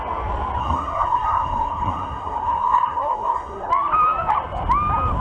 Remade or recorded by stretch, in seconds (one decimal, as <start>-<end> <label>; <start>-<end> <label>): 0.0-0.6 recorded; 0.6-3.7 remade; 3.7-5.2 recorded